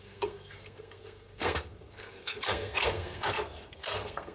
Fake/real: fake